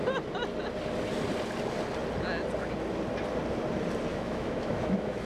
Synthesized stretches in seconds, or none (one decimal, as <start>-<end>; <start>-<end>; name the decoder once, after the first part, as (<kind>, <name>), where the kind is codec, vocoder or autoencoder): 4.1-5.3 (autoencoder, DAC-VAE)